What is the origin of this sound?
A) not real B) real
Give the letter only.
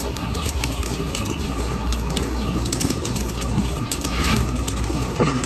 A